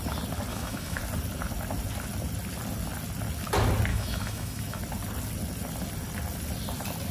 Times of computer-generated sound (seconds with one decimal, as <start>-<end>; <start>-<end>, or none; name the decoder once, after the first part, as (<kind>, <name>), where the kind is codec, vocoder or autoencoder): 0.5-1.0 (autoencoder, DAC-VAE); 3.9-4.8